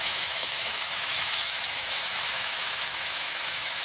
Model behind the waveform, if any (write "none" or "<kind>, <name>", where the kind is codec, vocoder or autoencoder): autoencoder, DAC-VAE